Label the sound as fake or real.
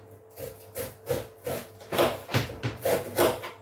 real